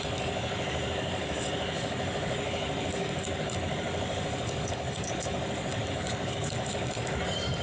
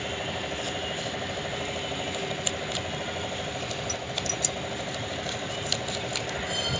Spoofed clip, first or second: first